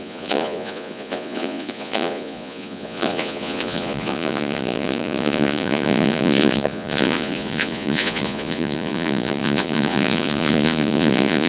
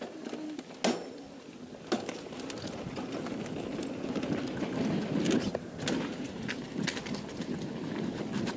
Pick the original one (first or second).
second